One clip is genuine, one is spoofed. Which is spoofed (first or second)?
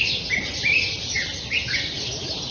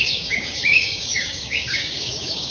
second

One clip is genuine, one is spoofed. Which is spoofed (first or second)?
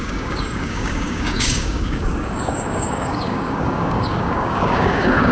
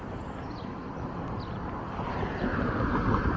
first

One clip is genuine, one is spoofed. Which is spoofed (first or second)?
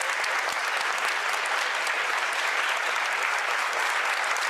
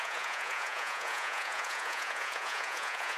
second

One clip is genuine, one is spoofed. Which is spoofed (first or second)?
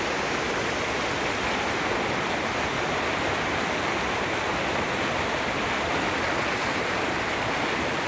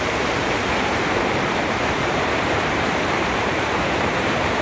second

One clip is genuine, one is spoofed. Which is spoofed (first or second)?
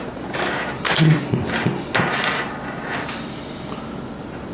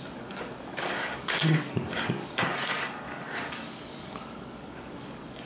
second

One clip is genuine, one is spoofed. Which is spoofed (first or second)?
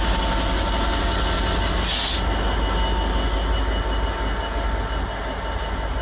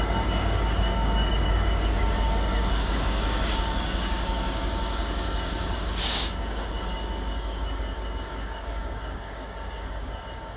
second